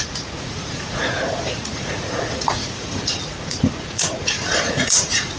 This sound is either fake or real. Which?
fake